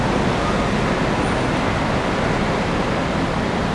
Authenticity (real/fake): real